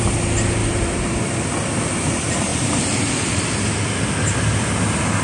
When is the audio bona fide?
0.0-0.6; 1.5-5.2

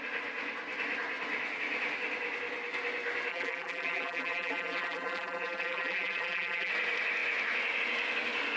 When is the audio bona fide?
0.0-3.3; 6.7-8.6

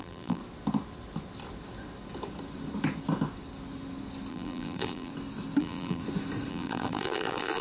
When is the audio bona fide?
0.4-4.3; 5.1-5.6; 6.0-6.5

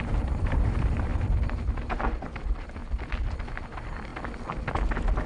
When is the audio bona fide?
1.1-1.8; 2.8-3.5; 4.1-5.3

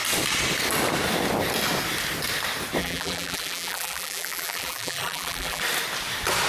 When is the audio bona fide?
0.0-2.8; 5.6-6.5

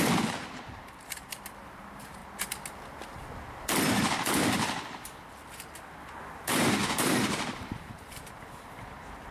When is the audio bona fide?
2.2-6.3

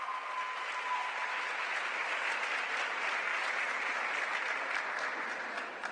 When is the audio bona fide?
0.0-1.0; 1.7-3.3; 4.8-5.9